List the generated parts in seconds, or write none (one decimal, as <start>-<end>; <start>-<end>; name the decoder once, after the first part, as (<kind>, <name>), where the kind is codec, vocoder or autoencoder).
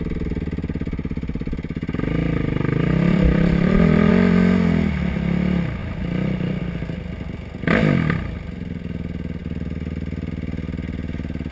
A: 2.2-4.1 (vocoder, BigVGAN v2); 5.8-6.6